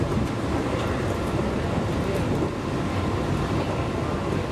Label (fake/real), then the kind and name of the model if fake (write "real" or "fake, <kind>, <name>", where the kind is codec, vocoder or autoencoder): real